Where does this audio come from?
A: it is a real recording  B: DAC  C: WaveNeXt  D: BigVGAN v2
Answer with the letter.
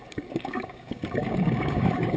B